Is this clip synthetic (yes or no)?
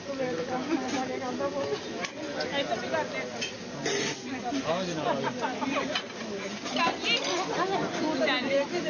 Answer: no